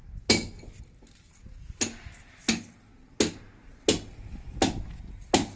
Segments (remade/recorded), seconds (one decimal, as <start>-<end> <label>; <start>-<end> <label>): 0.0-5.6 recorded